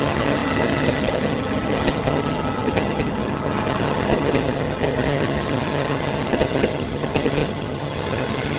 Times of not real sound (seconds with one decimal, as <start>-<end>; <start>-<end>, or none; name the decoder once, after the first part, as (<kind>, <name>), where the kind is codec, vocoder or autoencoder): 0.0-8.6 (vocoder, HiFi-GAN)